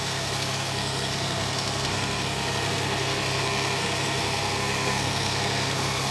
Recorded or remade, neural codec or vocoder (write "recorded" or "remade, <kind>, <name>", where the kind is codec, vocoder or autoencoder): remade, codec, SNAC